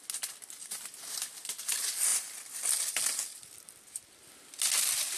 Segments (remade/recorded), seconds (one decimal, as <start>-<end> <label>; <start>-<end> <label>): 0.0-5.2 recorded